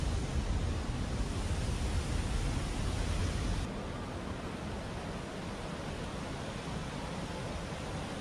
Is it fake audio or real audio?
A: real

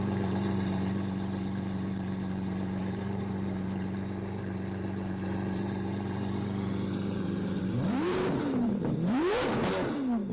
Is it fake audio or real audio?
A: fake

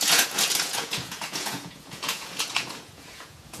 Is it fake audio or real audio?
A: fake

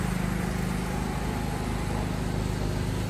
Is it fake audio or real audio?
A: real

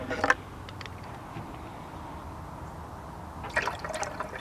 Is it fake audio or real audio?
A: real